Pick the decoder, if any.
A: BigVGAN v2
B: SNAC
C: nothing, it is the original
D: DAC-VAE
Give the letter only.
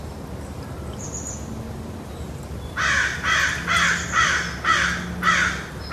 C